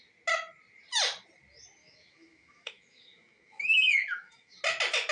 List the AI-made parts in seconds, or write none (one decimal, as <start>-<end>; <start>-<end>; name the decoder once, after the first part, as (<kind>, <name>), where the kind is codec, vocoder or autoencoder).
1.8-4.6 (autoencoder, DAC-VAE)